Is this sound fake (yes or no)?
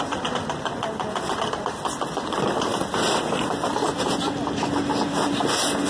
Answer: no